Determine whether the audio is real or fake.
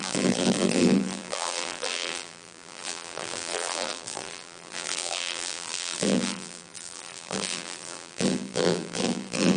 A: fake